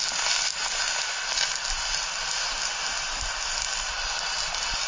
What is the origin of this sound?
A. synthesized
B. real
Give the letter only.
B